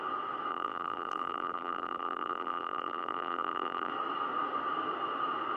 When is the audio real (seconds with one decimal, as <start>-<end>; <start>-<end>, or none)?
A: 0.0-0.5; 3.9-5.6